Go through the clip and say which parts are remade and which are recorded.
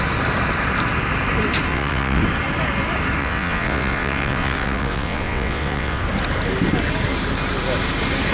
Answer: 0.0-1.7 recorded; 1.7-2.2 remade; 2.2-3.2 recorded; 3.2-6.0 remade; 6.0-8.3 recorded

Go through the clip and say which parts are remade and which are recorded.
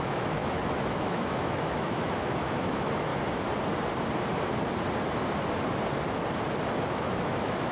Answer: 0.0-3.1 remade; 3.1-6.9 recorded; 6.9-7.7 remade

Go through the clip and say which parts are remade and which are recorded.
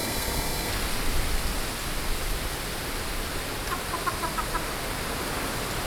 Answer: 0.0-0.7 remade; 0.7-5.9 recorded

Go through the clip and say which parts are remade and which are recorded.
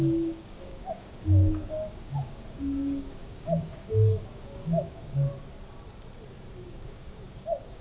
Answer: 0.0-5.3 remade; 5.3-6.6 recorded; 6.6-7.8 remade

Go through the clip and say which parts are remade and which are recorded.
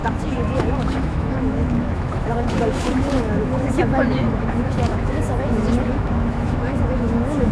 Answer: 0.0-7.5 remade